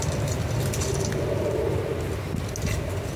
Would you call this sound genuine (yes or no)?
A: yes